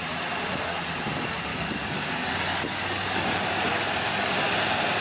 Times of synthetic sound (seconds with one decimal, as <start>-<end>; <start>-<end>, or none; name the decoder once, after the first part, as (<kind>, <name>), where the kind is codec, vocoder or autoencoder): 1.5-4.5 (codec, DAC)